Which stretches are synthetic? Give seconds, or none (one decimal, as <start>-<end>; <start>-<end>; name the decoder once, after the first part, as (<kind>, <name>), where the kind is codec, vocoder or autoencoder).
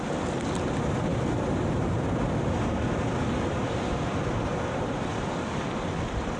none